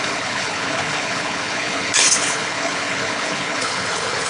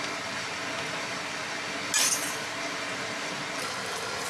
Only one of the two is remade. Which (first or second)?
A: first